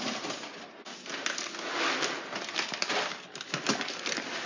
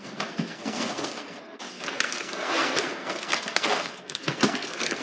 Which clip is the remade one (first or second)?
second